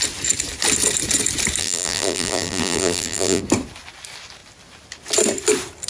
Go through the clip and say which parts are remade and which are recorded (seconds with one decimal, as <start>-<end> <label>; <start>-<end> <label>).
0.0-1.6 recorded; 1.6-3.4 remade; 3.4-5.9 recorded